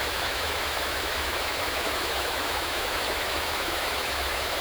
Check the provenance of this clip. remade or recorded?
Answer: remade